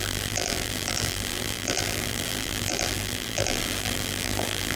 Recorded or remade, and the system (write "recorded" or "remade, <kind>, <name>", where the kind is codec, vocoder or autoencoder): remade, vocoder, BigVGAN v2